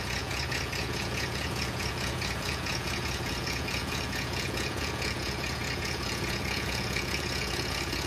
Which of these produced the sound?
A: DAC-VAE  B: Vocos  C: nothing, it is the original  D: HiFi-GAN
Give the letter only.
B